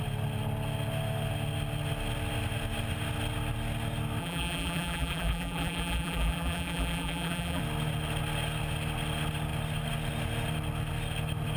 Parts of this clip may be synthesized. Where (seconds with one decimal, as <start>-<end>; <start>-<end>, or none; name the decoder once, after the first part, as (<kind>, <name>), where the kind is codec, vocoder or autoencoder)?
4.2-7.6 (vocoder, BigVGAN v2)